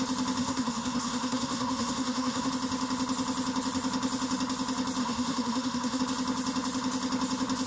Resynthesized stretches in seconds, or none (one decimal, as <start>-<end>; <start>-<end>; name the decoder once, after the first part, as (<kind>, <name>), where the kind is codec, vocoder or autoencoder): 0.4-2.5 (codec, SNAC); 5.0-6.0